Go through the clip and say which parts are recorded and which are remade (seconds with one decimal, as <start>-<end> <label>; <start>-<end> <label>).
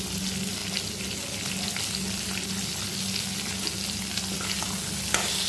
0.0-5.5 recorded